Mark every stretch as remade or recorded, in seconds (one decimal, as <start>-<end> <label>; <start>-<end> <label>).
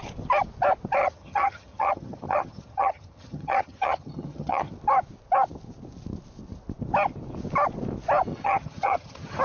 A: 0.0-1.0 recorded; 1.0-4.7 remade; 4.7-8.3 recorded; 8.3-9.4 remade